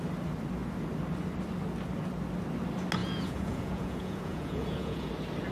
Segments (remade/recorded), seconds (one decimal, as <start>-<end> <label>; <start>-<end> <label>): 0.0-3.0 recorded; 3.0-5.1 remade; 5.1-5.5 recorded